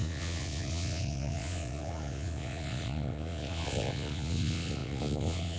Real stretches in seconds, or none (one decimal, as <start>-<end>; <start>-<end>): none